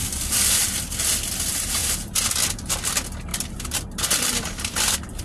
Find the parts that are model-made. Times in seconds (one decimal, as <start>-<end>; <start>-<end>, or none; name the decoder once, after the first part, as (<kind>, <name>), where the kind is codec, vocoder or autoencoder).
3.3-5.2 (vocoder, BigVGAN v2)